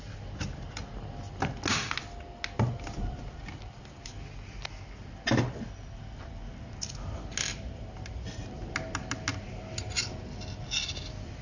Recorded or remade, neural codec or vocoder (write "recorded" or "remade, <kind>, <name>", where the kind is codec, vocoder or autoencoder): recorded